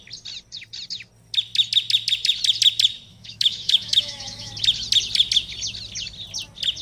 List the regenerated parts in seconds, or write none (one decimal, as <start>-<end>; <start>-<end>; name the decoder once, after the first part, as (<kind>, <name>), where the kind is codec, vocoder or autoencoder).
3.1-4.5 (autoencoder, DAC-VAE)